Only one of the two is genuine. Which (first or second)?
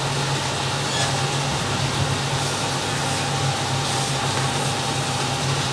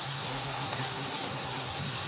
first